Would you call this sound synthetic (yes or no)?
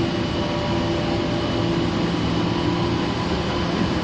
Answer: no